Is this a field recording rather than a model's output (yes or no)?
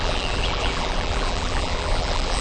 no